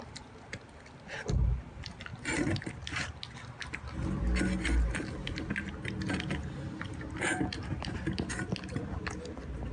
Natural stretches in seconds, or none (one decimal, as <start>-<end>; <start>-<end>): 0.0-9.7